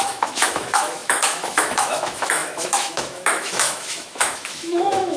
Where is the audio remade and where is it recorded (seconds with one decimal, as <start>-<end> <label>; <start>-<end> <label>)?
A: 0.0-5.2 remade